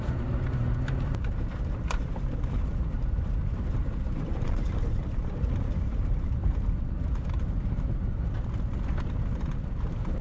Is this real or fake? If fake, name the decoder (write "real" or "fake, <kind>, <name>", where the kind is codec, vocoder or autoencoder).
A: fake, vocoder, BigVGAN v2